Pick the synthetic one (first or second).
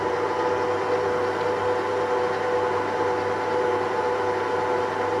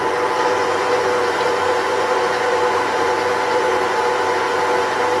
second